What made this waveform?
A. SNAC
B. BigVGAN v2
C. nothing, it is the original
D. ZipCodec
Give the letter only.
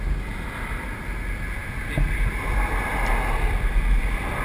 C